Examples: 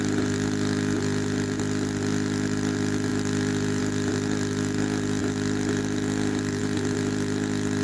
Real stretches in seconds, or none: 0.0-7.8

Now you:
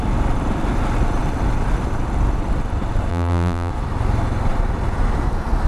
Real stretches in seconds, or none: 0.0-3.1; 3.7-5.7

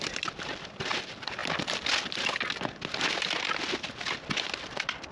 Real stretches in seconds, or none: 1.4-4.5

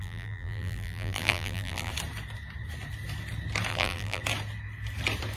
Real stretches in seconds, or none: 1.9-3.7; 4.2-5.4

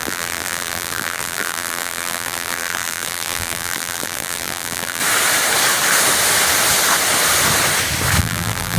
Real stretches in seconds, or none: 5.0-8.2

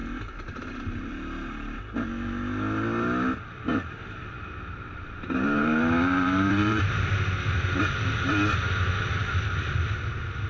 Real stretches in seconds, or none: 1.1-3.7; 7.1-10.5